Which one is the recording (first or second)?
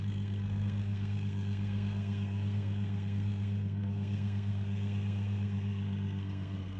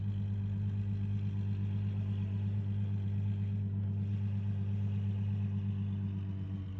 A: second